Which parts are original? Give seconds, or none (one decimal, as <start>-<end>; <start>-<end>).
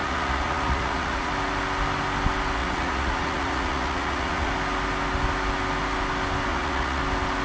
1.3-2.6; 4.5-6.5; 7.0-7.4